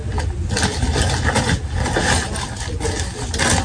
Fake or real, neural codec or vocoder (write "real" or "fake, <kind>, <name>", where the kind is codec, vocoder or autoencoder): real